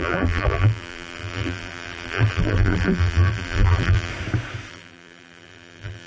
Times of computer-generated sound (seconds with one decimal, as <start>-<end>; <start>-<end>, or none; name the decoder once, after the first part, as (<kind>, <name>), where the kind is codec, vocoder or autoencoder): 0.0-4.1 (vocoder, BigVGAN v2); 4.7-6.1